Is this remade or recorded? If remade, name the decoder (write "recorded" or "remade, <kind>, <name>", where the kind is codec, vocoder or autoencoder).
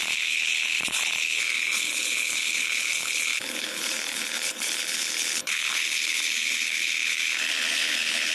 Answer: remade, codec, HILCodec